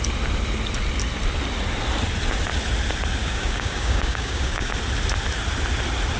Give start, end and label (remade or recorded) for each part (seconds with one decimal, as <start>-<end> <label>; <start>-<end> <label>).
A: 0.0-3.2 recorded; 3.2-4.7 remade; 4.7-6.2 recorded